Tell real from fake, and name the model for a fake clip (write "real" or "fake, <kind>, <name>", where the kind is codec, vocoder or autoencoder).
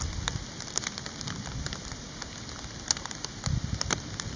fake, vocoder, BigVGAN v2